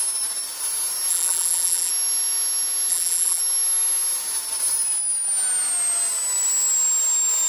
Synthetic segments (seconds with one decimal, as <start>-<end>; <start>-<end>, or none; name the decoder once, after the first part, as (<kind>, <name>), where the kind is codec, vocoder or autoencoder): 1.1-1.9 (vocoder, BigVGAN v2); 2.9-3.4